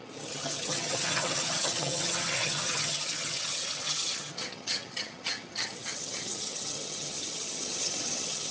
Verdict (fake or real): fake